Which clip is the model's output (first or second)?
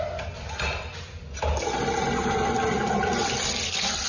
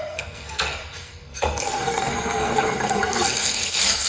second